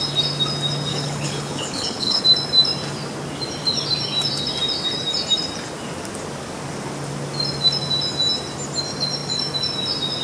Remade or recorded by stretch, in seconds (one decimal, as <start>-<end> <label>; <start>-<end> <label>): 0.0-0.9 recorded; 0.9-2.2 remade; 2.2-10.2 recorded